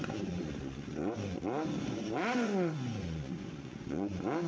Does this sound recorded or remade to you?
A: remade